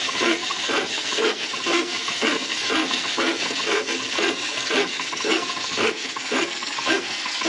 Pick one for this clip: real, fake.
fake